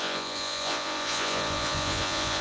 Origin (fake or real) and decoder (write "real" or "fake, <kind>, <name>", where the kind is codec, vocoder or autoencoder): fake, vocoder, Vocos